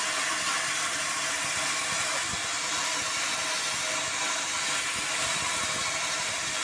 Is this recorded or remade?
recorded